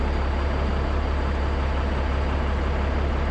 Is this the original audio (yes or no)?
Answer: yes